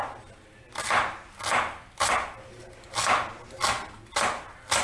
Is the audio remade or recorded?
recorded